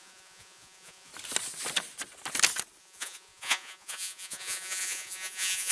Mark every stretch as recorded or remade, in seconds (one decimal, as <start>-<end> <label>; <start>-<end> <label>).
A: 0.0-1.1 remade; 1.1-2.8 recorded; 2.8-5.7 remade